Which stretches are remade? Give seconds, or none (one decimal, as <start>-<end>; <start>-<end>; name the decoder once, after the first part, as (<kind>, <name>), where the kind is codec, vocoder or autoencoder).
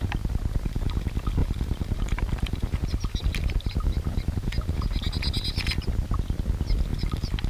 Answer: 1.4-4.8 (vocoder, BigVGAN v2); 6.9-7.5